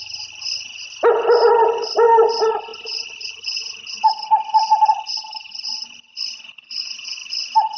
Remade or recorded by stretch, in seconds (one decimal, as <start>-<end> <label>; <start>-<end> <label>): 0.0-7.8 recorded

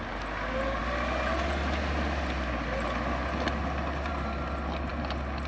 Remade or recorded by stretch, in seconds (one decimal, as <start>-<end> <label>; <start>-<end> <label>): 0.0-5.5 recorded

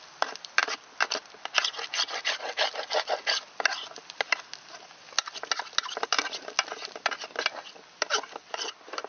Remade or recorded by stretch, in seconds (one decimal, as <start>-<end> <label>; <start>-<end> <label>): 0.0-9.1 recorded

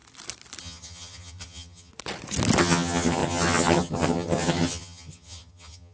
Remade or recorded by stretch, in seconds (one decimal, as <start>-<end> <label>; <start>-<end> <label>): 0.0-0.6 recorded; 0.6-1.9 remade; 1.9-2.6 recorded; 2.6-5.9 remade

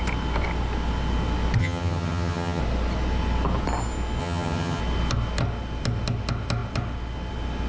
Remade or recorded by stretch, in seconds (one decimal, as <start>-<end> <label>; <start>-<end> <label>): 0.0-1.6 recorded; 1.6-2.6 remade; 2.6-4.2 recorded; 4.2-4.8 remade; 4.8-7.7 recorded

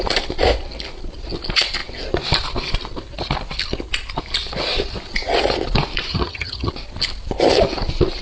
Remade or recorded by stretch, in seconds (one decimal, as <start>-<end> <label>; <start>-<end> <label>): 0.0-6.1 recorded; 6.1-6.7 remade; 6.7-8.2 recorded